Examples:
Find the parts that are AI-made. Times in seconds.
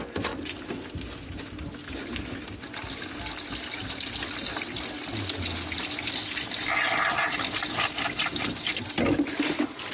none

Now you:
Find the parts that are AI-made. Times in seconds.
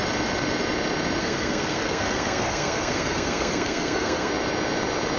1.2-4.3 (codec, SNAC)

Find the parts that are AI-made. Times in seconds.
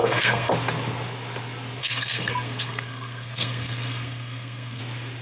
0.0-0.5 (codec, SNAC); 1.8-4.8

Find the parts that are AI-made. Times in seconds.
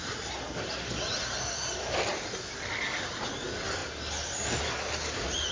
none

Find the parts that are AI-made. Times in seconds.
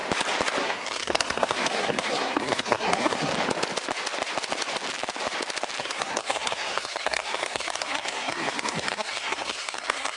0.6-3.3 (codec, SNAC); 5.8-10.2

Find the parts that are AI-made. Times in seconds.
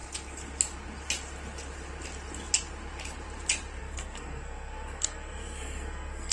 3.8-6.3 (codec, SNAC)